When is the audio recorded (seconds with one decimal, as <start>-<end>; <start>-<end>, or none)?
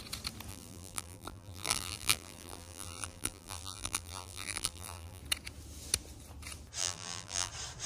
0.0-0.5; 5.2-6.8; 7.5-7.9